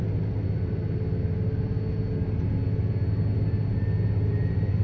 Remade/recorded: recorded